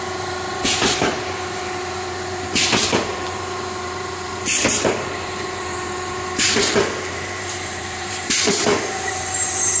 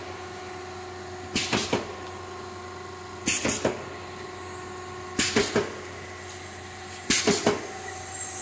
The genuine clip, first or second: second